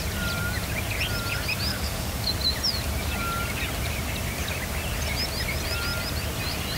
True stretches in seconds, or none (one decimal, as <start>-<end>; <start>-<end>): 0.0-1.7; 2.3-6.8